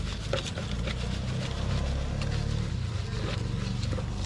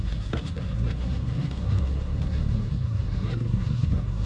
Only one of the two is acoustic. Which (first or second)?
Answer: first